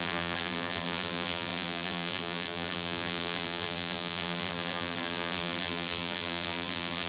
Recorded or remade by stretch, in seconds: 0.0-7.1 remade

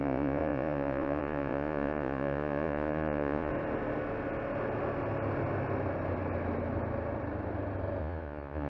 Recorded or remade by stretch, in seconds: 0.0-3.5 remade; 3.5-8.0 recorded; 8.0-8.7 remade

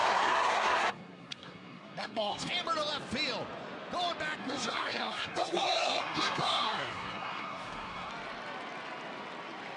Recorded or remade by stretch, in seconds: 0.0-2.5 remade; 2.5-4.4 recorded; 4.4-8.1 remade; 8.1-9.8 recorded

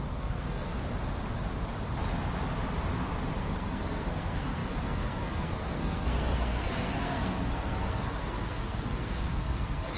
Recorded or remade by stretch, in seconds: 0.0-0.7 remade; 0.7-3.4 recorded; 3.4-10.0 remade

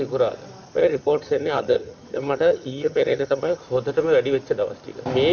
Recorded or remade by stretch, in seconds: 0.0-0.8 recorded; 0.8-3.6 remade; 3.6-5.3 recorded